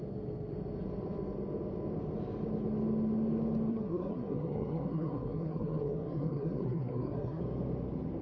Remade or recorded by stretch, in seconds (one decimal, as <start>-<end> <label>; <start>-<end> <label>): 0.0-3.7 recorded; 3.7-7.4 remade; 7.4-8.2 recorded